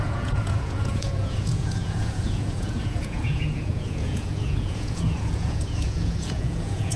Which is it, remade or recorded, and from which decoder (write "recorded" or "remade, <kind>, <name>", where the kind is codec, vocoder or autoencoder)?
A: remade, vocoder, Vocos